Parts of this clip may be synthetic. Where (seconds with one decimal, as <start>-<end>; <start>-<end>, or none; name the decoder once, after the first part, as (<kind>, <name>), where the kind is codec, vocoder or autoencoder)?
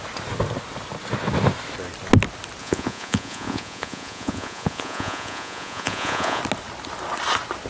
2.6-6.4 (vocoder, Vocos)